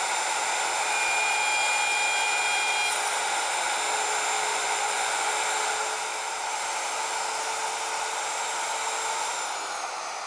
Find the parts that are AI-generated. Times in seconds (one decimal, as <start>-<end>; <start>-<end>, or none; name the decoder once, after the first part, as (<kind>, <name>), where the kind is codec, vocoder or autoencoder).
4.5-5.3 (vocoder, Vocos)